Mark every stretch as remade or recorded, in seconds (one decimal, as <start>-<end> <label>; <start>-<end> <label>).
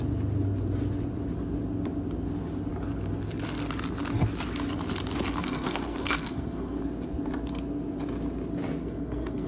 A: 0.0-5.4 recorded; 5.4-6.8 remade; 6.8-8.8 recorded; 8.8-9.5 remade